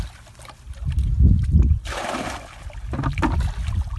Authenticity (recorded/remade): recorded